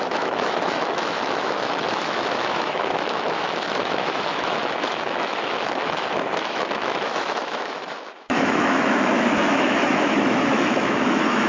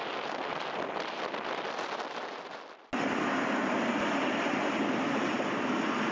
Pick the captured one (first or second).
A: second